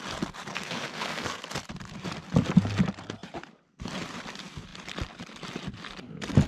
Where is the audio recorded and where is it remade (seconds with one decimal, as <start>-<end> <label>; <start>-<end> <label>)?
0.0-0.5 recorded; 0.5-1.4 remade; 1.4-6.5 recorded